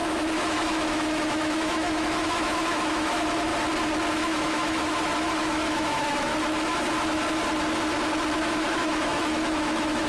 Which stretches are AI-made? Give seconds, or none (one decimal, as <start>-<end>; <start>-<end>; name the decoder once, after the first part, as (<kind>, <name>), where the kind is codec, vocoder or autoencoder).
0.0-3.5 (autoencoder, DAC-VAE); 4.1-6.3; 8.4-10.1